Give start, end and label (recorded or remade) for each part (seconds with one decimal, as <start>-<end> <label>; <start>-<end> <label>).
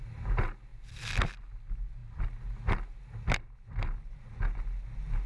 0.0-5.3 recorded